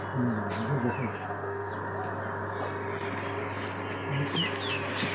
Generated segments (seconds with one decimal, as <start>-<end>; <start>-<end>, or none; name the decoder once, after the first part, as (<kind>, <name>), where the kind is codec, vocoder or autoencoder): 1.1-1.7 (codec, SNAC)